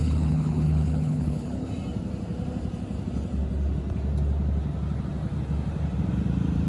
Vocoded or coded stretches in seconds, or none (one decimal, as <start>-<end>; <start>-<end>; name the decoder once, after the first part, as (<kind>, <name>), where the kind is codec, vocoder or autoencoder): 0.0-1.7 (codec, HILCodec)